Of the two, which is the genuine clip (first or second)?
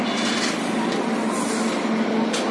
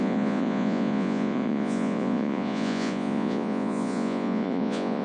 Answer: first